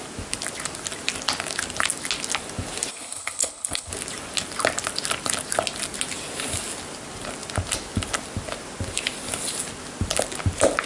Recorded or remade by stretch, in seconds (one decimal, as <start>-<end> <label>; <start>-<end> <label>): 0.0-2.9 recorded; 2.9-3.9 remade; 3.9-10.9 recorded